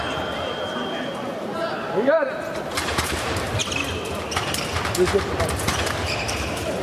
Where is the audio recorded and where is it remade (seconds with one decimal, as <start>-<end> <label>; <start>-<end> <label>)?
0.0-3.6 remade; 3.6-5.8 recorded; 5.8-6.8 remade